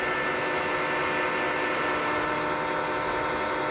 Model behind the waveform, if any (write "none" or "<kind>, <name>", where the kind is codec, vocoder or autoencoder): none